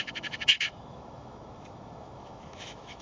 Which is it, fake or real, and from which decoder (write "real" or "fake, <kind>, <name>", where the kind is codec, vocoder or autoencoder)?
fake, autoencoder, DAC-VAE